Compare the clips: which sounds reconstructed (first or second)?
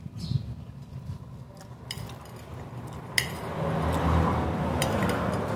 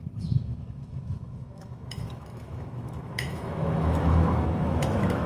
second